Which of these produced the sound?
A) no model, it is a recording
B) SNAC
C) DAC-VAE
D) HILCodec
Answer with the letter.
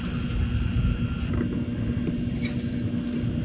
A